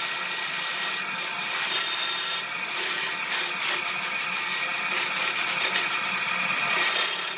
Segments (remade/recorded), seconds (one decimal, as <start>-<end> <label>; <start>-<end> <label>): 0.0-7.4 recorded